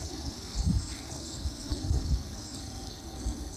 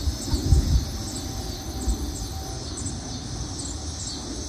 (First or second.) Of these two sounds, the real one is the second